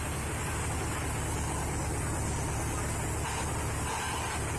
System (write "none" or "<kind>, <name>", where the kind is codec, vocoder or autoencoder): none